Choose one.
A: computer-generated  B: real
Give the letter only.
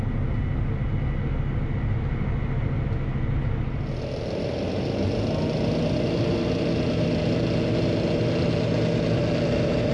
B